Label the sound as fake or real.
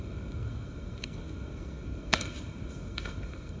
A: fake